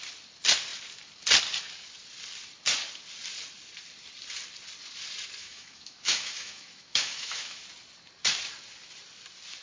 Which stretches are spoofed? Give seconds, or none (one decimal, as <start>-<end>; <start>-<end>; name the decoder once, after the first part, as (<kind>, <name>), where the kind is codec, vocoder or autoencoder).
5.4-7.6 (autoencoder, DAC-VAE)